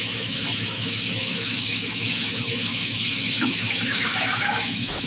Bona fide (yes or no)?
no